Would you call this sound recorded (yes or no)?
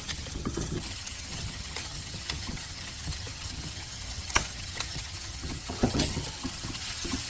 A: no